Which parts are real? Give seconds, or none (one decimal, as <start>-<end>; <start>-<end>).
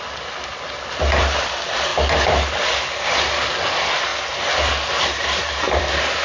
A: 1.9-2.5